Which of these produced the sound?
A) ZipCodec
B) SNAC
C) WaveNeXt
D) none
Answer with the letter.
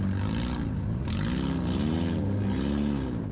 D